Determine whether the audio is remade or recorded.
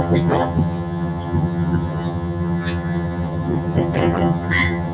remade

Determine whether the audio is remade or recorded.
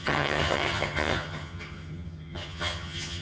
remade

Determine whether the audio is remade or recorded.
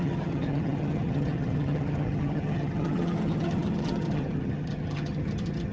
remade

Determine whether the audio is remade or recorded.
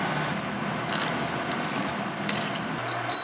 recorded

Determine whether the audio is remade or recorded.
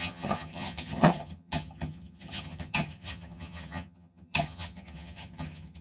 remade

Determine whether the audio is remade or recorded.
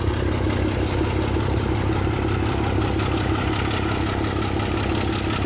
recorded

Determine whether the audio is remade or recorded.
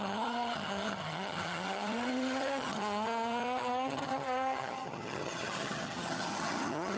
remade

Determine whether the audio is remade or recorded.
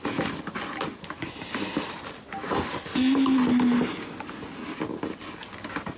recorded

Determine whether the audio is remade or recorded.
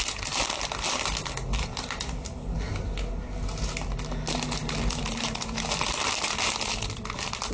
recorded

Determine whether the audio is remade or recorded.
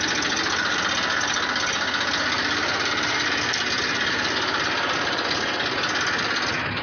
recorded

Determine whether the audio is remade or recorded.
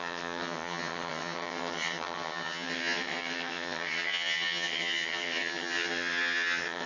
remade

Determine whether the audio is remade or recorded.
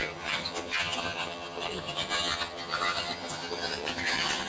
remade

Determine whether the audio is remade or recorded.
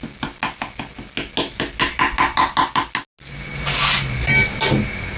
recorded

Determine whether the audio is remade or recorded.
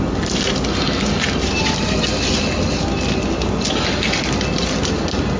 recorded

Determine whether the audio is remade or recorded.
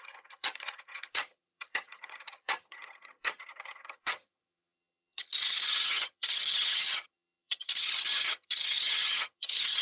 remade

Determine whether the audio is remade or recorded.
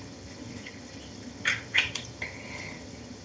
remade